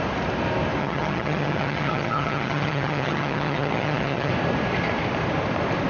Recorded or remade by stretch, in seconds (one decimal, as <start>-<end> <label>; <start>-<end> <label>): 0.0-0.8 recorded; 0.8-4.3 remade; 4.3-5.9 recorded